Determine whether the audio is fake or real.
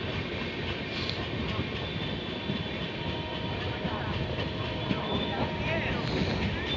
real